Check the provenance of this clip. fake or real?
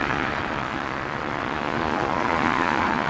fake